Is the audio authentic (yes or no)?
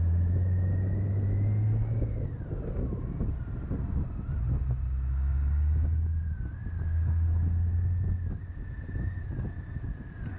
yes